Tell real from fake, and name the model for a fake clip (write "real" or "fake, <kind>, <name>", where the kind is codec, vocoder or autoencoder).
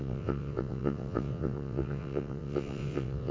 fake, vocoder, WaveNeXt